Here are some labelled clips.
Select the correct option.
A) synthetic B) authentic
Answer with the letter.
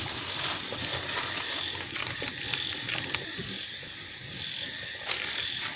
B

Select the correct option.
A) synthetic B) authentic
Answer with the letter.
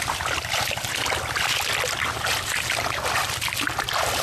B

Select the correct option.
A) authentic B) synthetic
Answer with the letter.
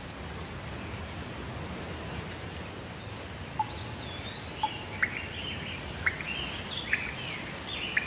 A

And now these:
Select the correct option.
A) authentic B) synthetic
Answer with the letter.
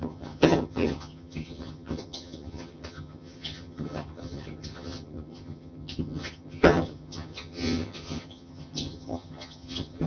B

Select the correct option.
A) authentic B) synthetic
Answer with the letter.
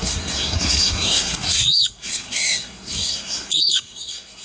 B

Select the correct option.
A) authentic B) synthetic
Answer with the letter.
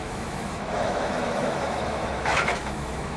B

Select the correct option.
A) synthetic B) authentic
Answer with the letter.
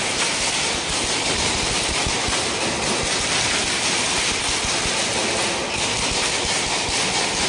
B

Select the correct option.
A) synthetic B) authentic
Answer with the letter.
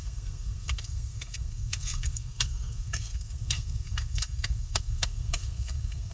A